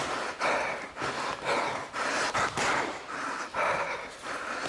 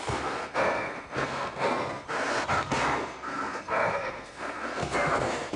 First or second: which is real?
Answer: first